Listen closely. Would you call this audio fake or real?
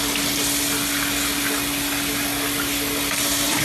real